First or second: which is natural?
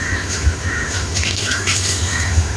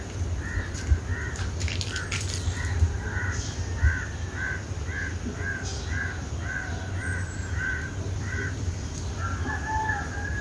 second